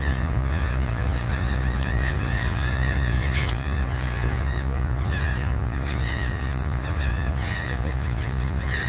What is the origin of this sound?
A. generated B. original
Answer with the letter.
A